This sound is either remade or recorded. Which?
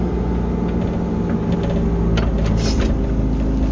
recorded